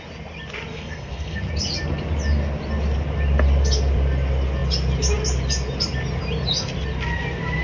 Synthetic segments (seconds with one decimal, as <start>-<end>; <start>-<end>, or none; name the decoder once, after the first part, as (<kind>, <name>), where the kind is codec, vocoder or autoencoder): 0.7-1.4 (codec, SNAC)